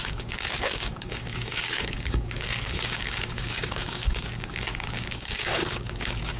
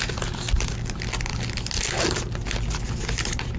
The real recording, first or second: second